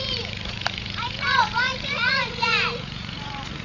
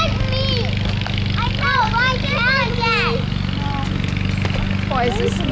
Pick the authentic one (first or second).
second